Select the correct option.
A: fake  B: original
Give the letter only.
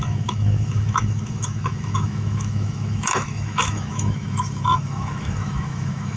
A